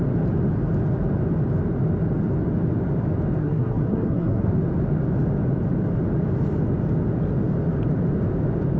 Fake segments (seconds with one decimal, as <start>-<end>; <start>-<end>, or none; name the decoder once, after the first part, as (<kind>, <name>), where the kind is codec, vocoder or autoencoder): 3.4-4.5 (codec, SNAC)